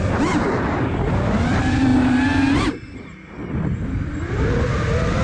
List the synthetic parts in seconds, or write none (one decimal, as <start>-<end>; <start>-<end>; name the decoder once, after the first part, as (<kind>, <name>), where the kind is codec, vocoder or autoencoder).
none